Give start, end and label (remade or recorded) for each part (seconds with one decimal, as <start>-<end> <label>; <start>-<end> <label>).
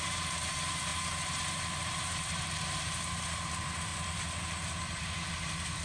0.0-3.9 remade; 3.9-5.3 recorded; 5.3-5.8 remade